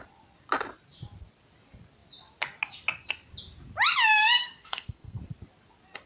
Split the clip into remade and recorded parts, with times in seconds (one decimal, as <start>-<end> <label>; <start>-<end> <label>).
0.0-4.4 recorded; 4.4-5.2 remade; 5.2-6.1 recorded